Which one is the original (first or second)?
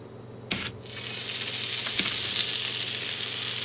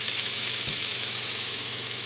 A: first